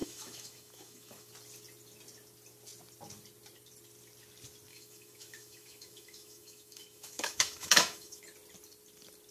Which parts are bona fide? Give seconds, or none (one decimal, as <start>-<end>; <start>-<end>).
1.3-4.7; 8.2-9.3